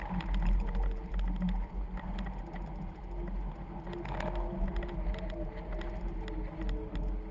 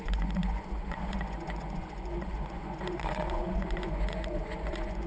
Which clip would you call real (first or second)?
first